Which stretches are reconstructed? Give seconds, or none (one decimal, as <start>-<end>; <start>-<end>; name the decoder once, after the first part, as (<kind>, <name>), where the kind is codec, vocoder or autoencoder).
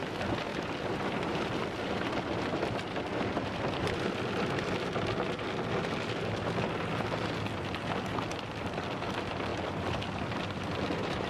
0.5-2.1 (vocoder, BigVGAN v2); 9.5-11.3